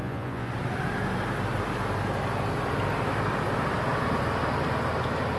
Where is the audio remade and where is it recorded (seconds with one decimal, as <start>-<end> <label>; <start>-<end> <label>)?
0.0-0.5 remade; 0.5-5.4 recorded